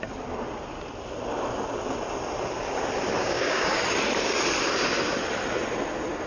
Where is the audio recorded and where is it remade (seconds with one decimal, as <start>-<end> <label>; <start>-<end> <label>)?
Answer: 0.0-3.2 recorded; 3.2-3.8 remade; 3.8-6.3 recorded

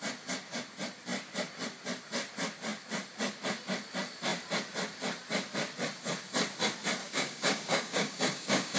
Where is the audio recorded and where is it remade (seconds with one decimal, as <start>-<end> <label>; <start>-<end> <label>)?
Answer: 0.0-7.0 recorded; 7.0-8.8 remade

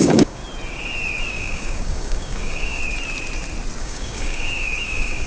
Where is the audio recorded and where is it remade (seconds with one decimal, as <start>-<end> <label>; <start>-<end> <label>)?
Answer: 0.0-0.4 remade; 0.4-1.3 recorded; 1.3-2.8 remade; 2.8-3.8 recorded; 3.8-5.3 remade